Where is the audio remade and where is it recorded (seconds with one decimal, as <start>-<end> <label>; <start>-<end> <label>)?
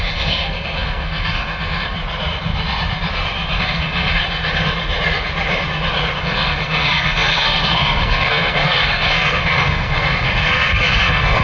0.0-2.0 remade; 2.0-3.6 recorded; 3.6-4.2 remade; 4.2-6.2 recorded; 6.2-11.4 remade